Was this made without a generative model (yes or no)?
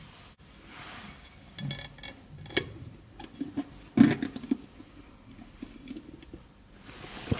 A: yes